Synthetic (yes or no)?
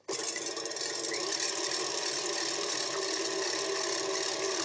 no